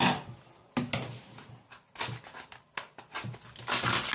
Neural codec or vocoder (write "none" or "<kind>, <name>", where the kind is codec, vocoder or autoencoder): none